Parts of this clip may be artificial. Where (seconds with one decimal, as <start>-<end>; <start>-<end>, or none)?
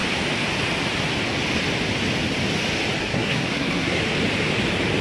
3.0-4.0